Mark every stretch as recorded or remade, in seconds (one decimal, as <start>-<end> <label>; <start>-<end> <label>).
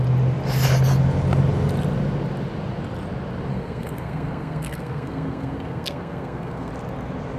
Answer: 0.0-3.5 recorded; 3.5-6.7 remade; 6.7-7.4 recorded